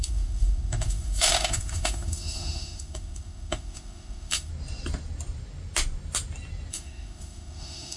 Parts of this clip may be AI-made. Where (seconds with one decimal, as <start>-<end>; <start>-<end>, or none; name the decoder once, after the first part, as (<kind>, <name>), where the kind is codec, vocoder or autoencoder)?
0.0-4.5 (autoencoder, DAC-VAE); 6.7-8.0